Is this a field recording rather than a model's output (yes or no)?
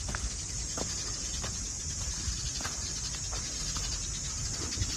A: yes